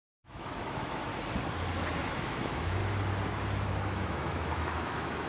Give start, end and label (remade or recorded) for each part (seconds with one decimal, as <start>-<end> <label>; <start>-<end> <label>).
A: 0.0-1.1 remade; 1.1-2.0 recorded; 2.0-2.8 remade; 2.8-3.7 recorded; 3.7-5.3 remade